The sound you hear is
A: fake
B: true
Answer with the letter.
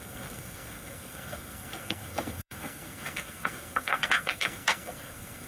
A